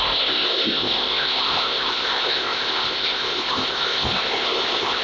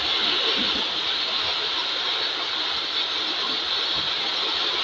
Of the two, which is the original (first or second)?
second